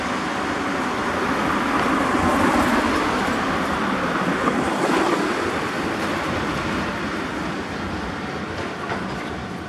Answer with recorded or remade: recorded